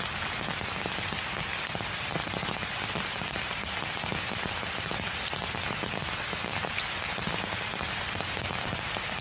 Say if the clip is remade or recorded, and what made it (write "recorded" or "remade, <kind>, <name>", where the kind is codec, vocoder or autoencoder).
recorded